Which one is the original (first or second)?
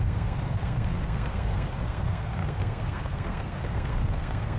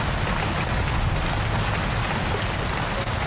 second